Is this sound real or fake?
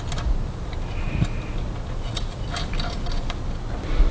real